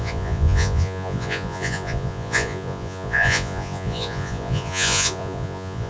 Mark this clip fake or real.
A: fake